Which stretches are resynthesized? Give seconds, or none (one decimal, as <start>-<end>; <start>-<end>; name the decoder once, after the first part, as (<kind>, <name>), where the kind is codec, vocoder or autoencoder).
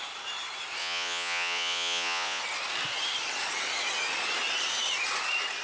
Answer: 0.8-2.4 (vocoder, Vocos)